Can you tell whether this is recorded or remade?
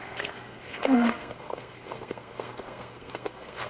remade